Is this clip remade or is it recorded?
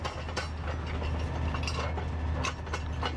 recorded